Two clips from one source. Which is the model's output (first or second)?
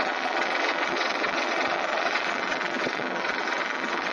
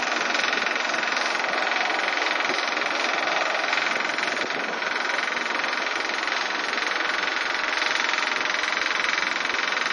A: first